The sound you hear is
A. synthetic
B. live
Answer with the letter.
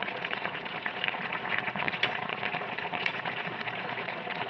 A